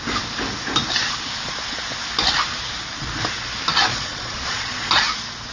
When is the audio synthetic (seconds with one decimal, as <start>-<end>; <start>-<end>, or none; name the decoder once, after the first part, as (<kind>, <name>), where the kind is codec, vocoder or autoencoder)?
3.9-4.9 (vocoder, Vocos)